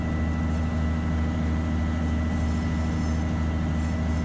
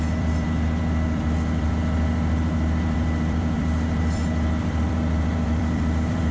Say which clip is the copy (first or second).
second